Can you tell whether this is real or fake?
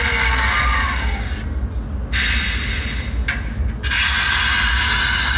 real